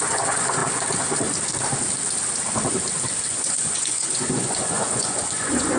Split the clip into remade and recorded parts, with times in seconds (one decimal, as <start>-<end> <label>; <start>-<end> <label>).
0.0-0.6 remade; 0.6-3.3 recorded; 3.3-5.8 remade